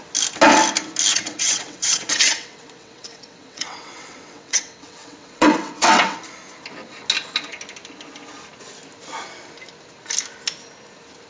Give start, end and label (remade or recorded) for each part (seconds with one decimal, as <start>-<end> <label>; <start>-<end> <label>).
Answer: 0.0-1.1 recorded; 1.1-6.2 remade; 6.2-11.3 recorded

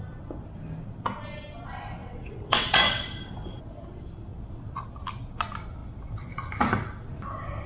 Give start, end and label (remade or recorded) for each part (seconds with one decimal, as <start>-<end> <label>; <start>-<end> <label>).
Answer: 0.0-2.0 recorded; 2.0-3.7 remade; 3.7-7.7 recorded

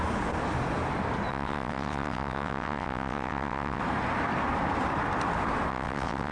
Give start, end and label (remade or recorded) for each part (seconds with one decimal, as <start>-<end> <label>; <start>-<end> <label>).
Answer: 0.0-1.3 recorded; 1.3-3.8 remade; 3.8-5.7 recorded; 5.7-6.3 remade